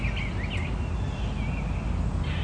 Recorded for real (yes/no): yes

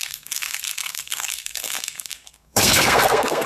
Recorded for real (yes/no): no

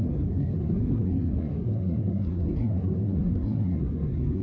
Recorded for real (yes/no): no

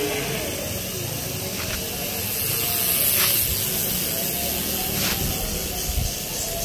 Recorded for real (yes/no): yes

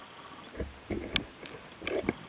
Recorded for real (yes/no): yes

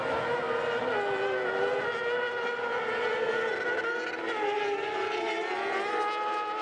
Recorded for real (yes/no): yes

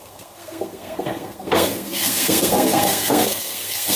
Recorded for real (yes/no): no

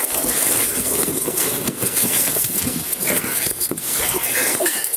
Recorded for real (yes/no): no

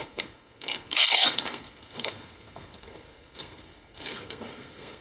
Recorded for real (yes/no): no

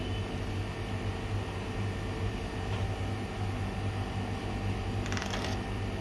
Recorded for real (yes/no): yes